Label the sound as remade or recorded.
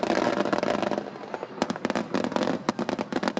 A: recorded